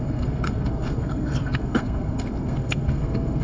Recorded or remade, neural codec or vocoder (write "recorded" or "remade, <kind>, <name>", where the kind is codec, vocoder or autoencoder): remade, codec, SNAC